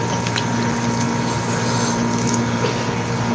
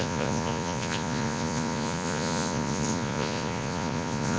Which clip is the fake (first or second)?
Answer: second